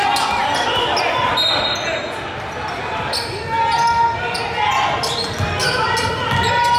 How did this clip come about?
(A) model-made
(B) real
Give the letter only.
B